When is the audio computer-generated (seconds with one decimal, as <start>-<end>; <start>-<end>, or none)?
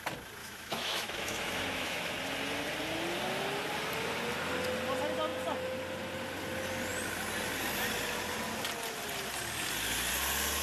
0.4-2.1